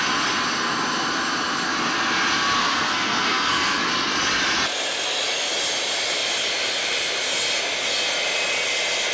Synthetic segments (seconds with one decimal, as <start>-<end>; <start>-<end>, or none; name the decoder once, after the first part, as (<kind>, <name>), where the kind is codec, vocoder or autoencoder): 2.6-3.9 (codec, SNAC)